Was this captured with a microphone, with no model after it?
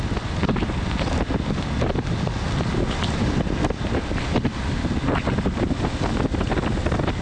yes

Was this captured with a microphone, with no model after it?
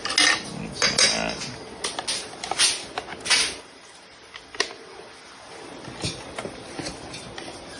yes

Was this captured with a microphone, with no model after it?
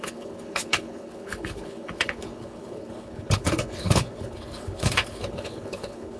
no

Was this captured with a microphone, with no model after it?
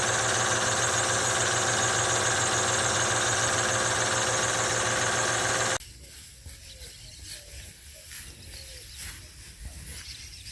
yes